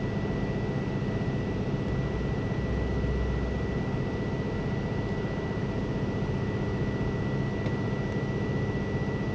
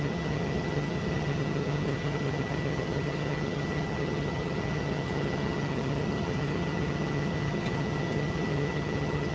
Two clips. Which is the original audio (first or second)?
first